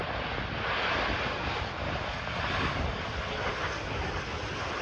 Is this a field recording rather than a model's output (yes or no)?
yes